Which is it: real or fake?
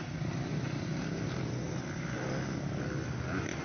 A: real